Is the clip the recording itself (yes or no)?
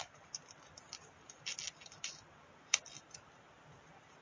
yes